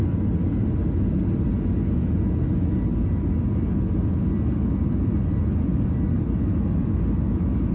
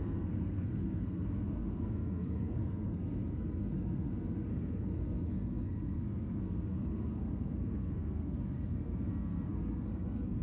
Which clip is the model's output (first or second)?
second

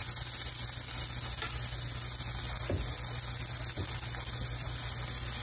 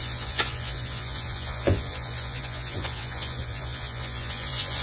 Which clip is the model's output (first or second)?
second